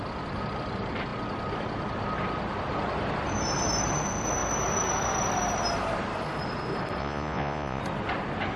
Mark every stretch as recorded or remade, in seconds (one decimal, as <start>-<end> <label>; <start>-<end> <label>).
0.0-7.0 recorded; 7.0-7.8 remade; 7.8-8.6 recorded